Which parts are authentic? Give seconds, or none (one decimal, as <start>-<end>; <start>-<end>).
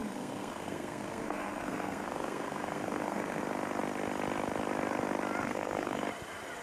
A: 3.4-5.4; 6.0-6.6